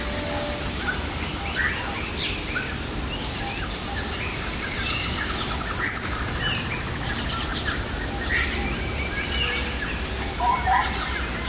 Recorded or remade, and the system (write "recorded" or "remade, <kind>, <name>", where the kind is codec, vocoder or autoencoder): recorded